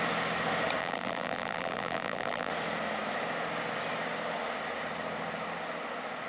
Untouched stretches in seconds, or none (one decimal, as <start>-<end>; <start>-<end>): 0.0-0.8; 2.5-6.3